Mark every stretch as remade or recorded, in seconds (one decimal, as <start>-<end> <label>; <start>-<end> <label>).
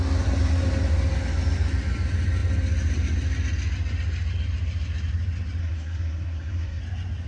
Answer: 0.0-5.6 recorded; 5.6-6.8 remade; 6.8-7.3 recorded